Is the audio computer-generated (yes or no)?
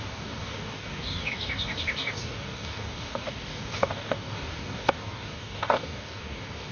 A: yes